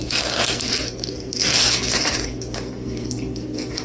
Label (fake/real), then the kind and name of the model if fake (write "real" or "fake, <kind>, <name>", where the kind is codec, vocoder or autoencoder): fake, codec, SNAC